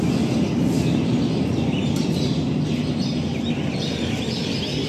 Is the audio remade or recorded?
recorded